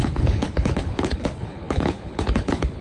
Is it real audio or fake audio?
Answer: fake